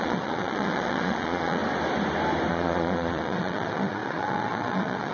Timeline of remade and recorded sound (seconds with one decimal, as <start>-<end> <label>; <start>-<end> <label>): 0.0-1.6 remade; 1.6-2.5 recorded; 2.5-5.1 remade